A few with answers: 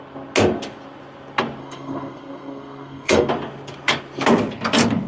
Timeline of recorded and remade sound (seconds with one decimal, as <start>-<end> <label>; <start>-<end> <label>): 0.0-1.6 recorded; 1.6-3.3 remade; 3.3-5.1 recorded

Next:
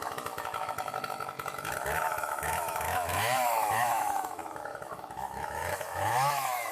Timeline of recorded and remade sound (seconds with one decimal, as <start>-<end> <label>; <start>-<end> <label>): 0.0-6.7 remade

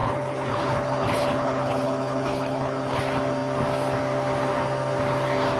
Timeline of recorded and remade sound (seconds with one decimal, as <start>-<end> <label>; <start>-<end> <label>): 0.0-3.0 remade; 3.0-5.6 recorded